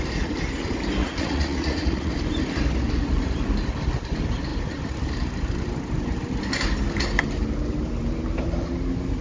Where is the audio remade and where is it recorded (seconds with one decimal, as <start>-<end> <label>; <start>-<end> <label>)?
0.0-1.0 recorded; 1.0-2.1 remade; 2.1-9.2 recorded